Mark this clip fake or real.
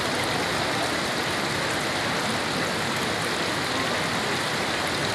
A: real